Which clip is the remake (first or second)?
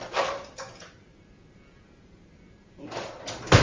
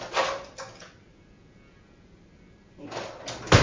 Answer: first